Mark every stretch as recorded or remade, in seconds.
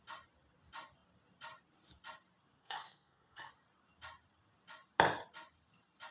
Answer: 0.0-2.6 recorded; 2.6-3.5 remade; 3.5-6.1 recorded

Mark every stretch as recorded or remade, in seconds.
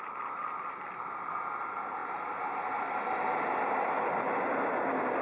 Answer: 0.0-5.2 recorded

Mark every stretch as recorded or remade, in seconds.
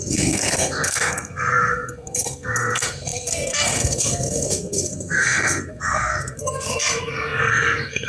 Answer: 0.0-8.1 remade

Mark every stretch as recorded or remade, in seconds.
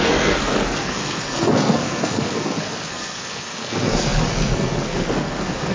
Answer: 0.0-5.7 remade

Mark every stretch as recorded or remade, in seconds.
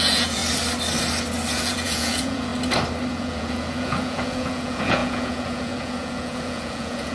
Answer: 0.0-0.4 remade; 0.4-1.5 recorded; 1.5-2.5 remade; 2.5-3.1 recorded; 3.1-7.1 remade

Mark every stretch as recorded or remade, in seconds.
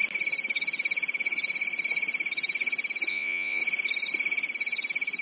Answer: 0.0-3.1 recorded; 3.1-3.6 remade; 3.6-5.2 recorded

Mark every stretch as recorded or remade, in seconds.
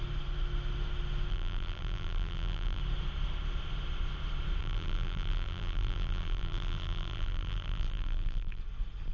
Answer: 0.0-1.3 recorded; 1.3-2.8 remade; 2.8-4.6 recorded; 4.6-8.6 remade; 8.6-9.1 recorded